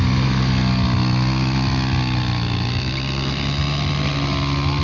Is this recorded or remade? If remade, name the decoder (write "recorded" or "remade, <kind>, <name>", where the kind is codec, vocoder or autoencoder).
recorded